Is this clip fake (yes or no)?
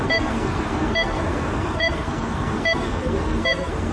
yes